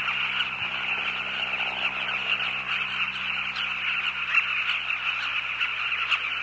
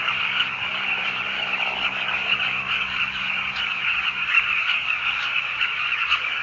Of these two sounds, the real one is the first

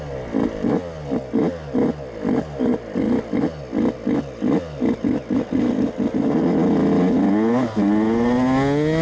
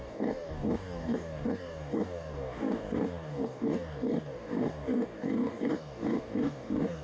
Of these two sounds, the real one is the first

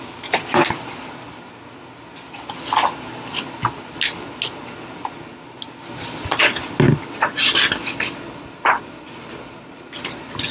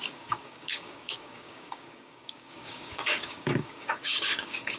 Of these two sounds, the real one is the first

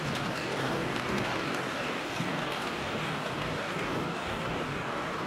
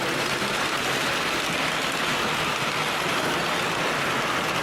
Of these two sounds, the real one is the second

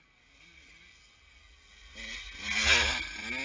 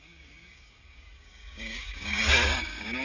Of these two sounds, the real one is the first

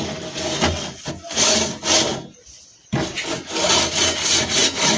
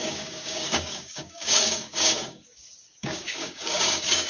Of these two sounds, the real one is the first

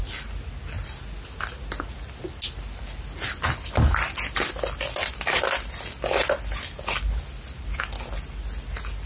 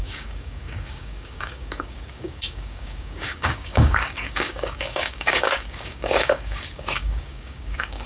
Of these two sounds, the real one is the first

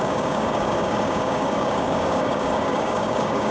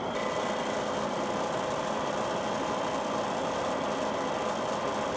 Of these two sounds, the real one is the second